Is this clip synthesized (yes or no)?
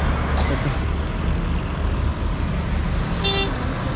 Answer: no